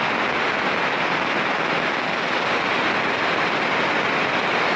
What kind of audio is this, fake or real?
real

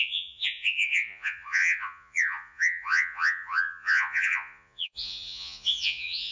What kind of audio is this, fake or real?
fake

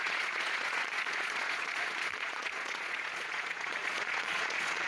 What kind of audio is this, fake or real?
fake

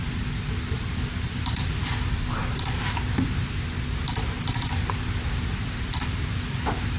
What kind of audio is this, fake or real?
real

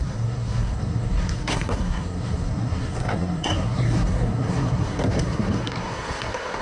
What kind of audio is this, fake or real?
fake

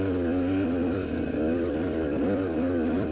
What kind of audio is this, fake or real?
fake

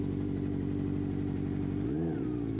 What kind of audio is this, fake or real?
real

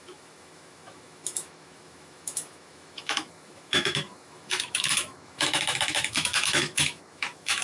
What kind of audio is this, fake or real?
fake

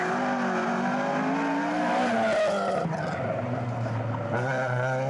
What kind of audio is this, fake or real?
real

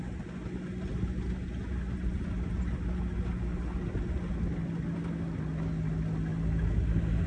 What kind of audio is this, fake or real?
real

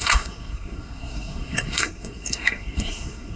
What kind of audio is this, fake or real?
fake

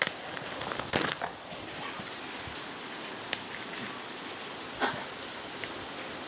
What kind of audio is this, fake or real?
real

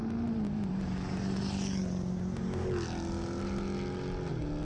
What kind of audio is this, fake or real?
real